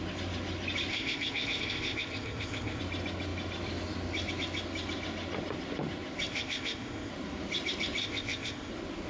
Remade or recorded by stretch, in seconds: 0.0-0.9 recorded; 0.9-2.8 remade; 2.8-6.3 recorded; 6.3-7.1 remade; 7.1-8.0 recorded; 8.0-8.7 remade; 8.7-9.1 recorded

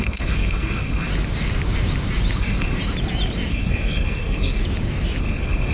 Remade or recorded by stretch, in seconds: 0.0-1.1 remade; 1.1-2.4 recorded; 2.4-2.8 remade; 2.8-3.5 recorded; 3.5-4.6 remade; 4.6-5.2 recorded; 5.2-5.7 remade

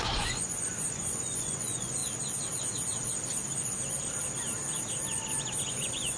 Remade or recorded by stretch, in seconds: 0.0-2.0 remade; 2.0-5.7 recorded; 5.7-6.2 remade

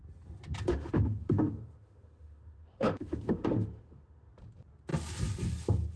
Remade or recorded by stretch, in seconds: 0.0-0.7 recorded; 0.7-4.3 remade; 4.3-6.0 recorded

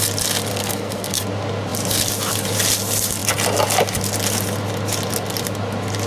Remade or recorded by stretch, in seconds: 0.0-0.5 recorded; 0.5-1.2 remade; 1.2-6.1 recorded

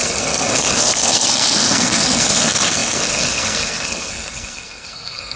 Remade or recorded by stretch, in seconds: 0.0-5.4 remade

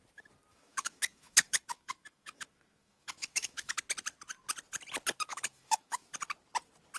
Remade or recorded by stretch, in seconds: 0.0-0.5 recorded; 0.5-3.8 remade; 3.8-5.3 recorded; 5.3-6.0 remade; 6.0-7.0 recorded